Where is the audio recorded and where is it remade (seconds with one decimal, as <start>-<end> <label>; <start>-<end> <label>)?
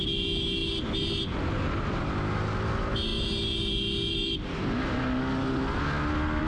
0.0-6.5 recorded